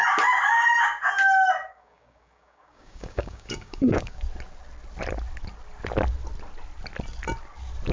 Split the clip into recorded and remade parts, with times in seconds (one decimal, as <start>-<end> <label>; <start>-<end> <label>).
0.0-1.7 recorded; 1.7-4.2 remade; 4.2-7.9 recorded